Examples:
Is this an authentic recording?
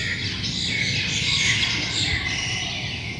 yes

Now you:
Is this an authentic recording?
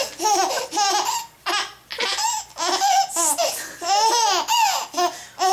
yes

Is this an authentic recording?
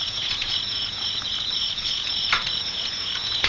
no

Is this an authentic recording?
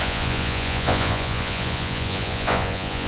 no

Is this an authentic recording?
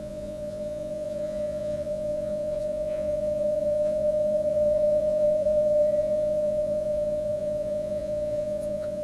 no